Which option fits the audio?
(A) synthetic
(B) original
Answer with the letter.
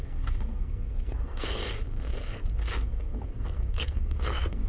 A